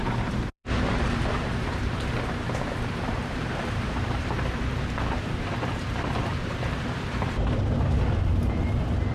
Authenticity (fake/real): fake